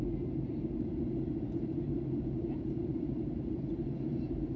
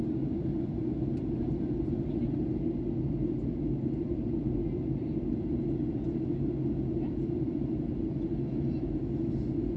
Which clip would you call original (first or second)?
second